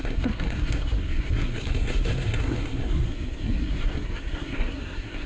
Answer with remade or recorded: remade